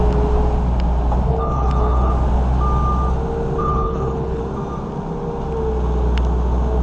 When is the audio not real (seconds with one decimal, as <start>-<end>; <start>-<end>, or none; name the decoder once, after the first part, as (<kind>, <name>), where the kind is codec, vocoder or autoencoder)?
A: 1.3-2.1 (codec, HILCodec); 3.6-4.4